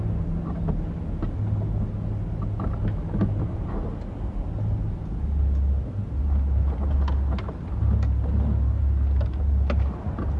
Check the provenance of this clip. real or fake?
real